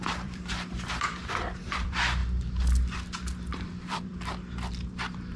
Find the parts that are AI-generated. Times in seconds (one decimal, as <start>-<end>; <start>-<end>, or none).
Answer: 0.0-2.2; 3.5-4.1; 4.9-5.4